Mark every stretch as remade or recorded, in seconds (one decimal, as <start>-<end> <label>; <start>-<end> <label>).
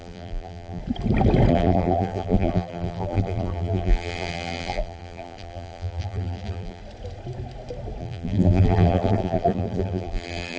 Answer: 0.0-0.8 remade; 0.8-1.5 recorded; 1.5-6.8 remade; 6.8-8.0 recorded; 8.0-10.6 remade